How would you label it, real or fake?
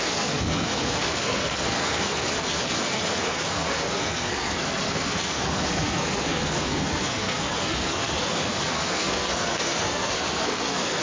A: fake